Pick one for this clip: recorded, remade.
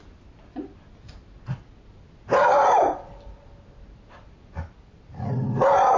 recorded